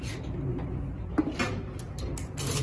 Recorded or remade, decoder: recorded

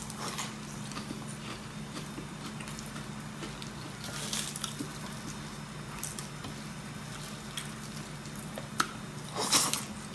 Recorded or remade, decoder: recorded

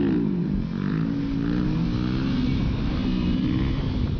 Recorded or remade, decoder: recorded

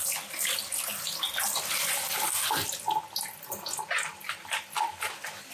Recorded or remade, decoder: recorded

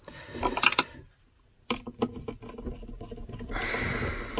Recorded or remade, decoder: recorded